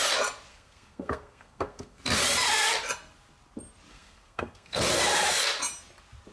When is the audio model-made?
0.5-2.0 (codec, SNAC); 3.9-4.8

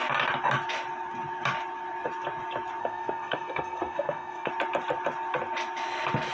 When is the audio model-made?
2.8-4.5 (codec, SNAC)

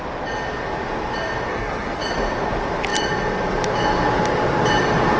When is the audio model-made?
1.5-2.0 (codec, SNAC)